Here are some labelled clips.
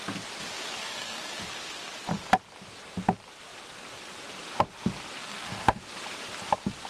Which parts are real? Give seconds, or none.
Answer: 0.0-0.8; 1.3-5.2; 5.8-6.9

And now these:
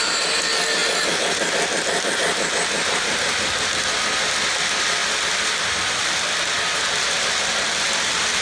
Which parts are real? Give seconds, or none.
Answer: 0.0-8.4

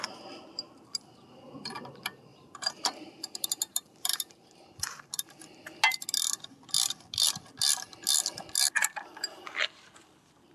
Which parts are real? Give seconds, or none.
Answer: 0.0-2.3; 4.7-10.5

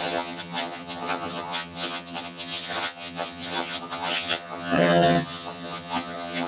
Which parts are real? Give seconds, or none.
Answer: none

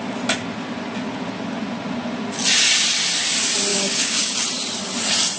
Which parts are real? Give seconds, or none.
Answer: 0.0-3.7; 4.4-5.4

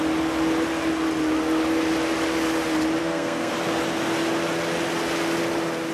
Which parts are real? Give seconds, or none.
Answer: 0.0-3.0; 3.5-5.9

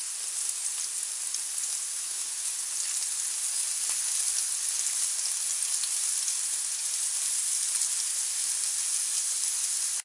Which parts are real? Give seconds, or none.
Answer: 0.0-1.9; 2.5-10.0

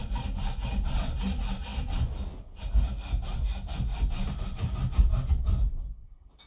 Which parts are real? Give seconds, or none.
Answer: 0.0-6.5